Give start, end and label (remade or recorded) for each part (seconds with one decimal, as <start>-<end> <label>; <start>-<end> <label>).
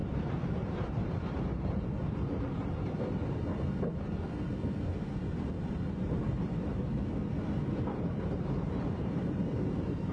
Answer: 0.0-3.2 remade; 3.2-5.6 recorded; 5.6-6.9 remade; 6.9-7.8 recorded; 7.8-10.1 remade